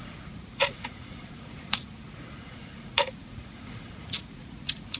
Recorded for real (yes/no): no